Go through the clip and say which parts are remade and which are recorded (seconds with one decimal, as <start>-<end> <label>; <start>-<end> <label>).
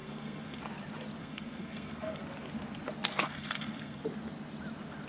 0.0-0.6 remade; 0.6-1.2 recorded; 1.2-2.2 remade; 2.2-3.1 recorded; 3.1-4.0 remade; 4.0-5.1 recorded